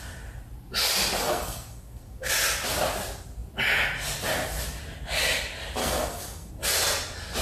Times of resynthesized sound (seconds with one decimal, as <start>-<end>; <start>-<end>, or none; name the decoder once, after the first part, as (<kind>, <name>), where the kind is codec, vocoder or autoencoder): 1.2-2.3 (codec, SNAC); 5.8-6.5